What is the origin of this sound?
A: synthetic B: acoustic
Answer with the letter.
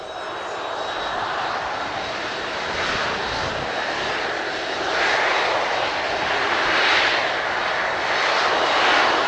B